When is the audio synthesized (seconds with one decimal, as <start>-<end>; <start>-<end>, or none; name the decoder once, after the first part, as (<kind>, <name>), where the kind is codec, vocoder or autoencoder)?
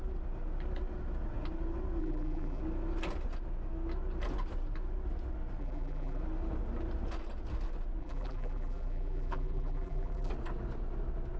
2.0-2.6 (vocoder, BigVGAN v2); 5.6-6.2; 8.0-10.3